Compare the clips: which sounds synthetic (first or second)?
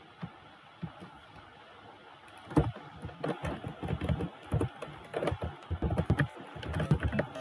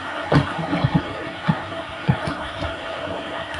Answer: second